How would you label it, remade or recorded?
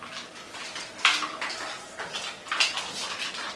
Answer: recorded